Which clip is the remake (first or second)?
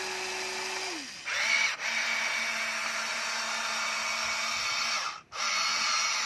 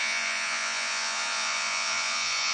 second